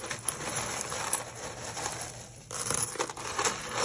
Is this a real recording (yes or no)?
yes